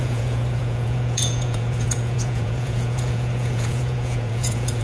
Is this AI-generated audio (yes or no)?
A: yes